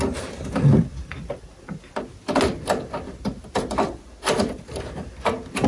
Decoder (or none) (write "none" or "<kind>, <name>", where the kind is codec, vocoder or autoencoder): none